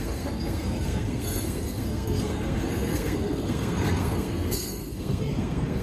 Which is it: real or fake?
fake